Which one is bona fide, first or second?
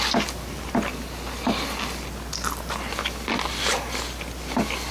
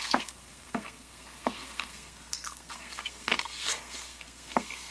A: first